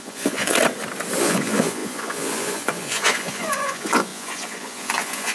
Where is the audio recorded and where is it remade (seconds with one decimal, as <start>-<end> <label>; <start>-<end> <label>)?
0.0-0.6 remade; 0.6-1.2 recorded; 1.2-5.3 remade